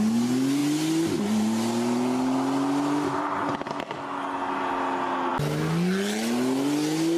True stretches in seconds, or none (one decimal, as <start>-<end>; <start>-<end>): 0.0-7.2